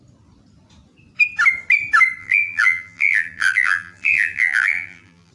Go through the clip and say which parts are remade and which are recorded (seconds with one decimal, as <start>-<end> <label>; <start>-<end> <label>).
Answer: 0.0-2.2 recorded; 2.2-5.3 remade